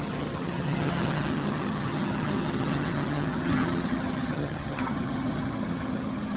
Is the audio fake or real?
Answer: fake